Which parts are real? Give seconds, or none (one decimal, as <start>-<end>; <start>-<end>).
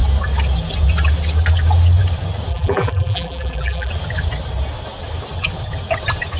0.0-2.5; 3.9-6.4